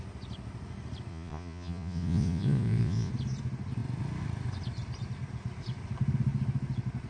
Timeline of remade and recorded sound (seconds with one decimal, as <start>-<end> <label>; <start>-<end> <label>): 0.0-1.1 recorded; 1.1-3.1 remade; 3.1-7.1 recorded